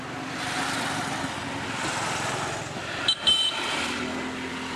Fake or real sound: real